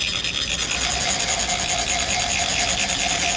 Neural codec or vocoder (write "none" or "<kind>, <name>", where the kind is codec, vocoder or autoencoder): none